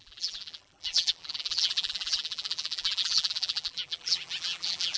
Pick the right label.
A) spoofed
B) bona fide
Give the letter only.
A